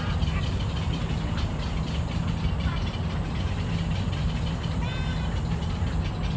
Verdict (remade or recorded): recorded